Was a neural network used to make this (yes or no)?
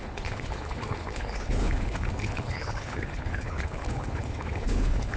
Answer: yes